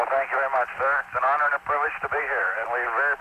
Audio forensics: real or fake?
real